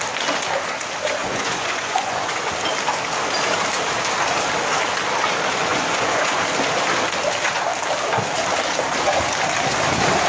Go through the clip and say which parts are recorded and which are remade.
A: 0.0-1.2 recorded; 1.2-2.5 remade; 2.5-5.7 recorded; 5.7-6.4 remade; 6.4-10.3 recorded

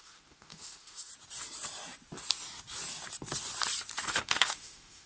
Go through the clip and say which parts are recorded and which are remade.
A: 0.0-1.1 remade; 1.1-4.1 recorded; 4.1-5.1 remade

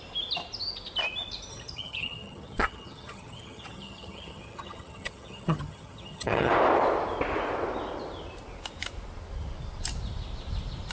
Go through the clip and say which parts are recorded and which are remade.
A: 0.0-1.5 recorded; 1.5-6.5 remade; 6.5-10.9 recorded